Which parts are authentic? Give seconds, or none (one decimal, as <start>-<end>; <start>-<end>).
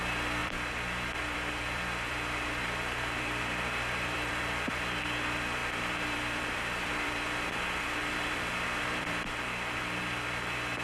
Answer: 0.0-0.4; 5.0-5.6; 10.0-10.8